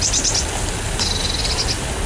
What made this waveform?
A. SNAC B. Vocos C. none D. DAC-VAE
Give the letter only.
C